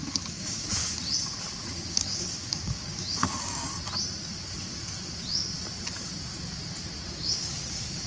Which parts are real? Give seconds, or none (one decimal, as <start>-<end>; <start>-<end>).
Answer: 0.8-1.7; 3.7-7.1